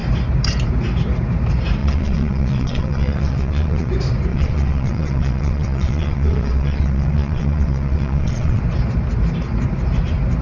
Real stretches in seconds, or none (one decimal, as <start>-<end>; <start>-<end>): 0.0-1.8; 3.9-4.3; 8.6-10.4